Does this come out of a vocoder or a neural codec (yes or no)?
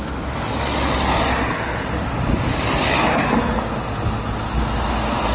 no